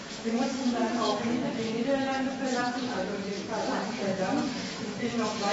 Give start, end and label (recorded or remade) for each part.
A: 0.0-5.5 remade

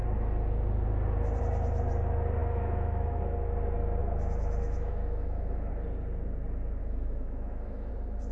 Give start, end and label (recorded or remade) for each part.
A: 0.0-2.4 recorded; 2.4-3.2 remade; 3.2-4.0 recorded; 4.0-5.7 remade; 5.7-6.8 recorded; 6.8-7.9 remade; 7.9-8.3 recorded

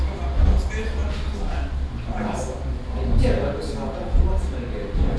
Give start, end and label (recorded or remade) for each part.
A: 0.0-5.2 recorded

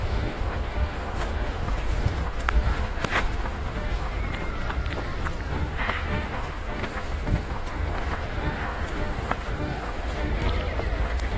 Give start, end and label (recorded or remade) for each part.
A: 0.0-4.2 remade; 4.2-5.5 recorded; 5.5-10.4 remade; 10.4-11.0 recorded; 11.0-11.4 remade

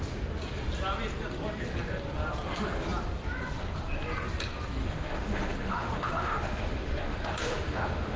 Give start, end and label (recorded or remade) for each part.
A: 0.0-4.8 recorded; 4.8-8.2 remade

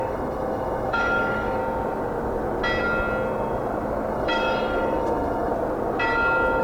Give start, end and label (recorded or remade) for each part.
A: 0.0-1.6 remade; 1.6-4.1 recorded; 4.1-5.5 remade; 5.5-6.6 recorded